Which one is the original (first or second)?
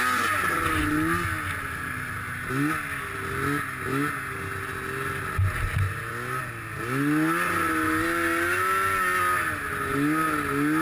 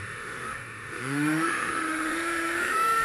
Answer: first